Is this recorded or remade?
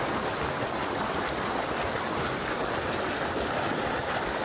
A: recorded